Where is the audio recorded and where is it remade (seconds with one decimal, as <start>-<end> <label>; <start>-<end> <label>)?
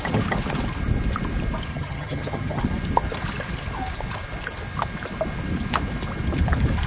0.0-1.7 recorded; 1.7-2.6 remade; 2.6-6.9 recorded